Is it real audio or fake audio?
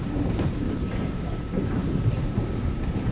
fake